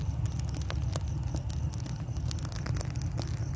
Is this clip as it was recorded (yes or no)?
yes